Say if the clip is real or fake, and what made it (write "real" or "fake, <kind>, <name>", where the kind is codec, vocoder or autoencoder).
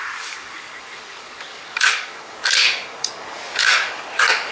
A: fake, codec, DAC